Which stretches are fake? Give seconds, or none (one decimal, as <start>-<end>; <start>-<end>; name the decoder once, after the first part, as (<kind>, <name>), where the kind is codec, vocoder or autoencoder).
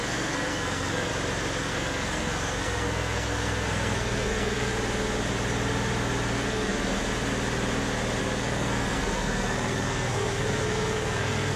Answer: 0.0-1.1 (codec, SNAC); 1.6-4.7; 6.3-6.9; 8.2-11.6